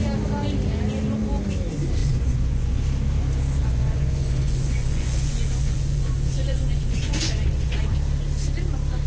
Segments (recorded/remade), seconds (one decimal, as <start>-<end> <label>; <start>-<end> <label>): 0.0-2.0 recorded; 2.0-2.8 remade; 2.8-3.6 recorded; 3.6-7.8 remade; 7.8-9.1 recorded